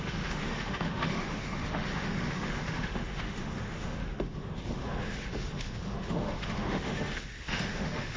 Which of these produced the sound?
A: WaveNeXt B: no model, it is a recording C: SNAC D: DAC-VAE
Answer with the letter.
D